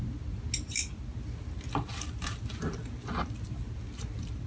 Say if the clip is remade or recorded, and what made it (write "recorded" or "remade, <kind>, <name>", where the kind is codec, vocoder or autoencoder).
recorded